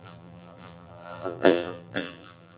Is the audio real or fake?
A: fake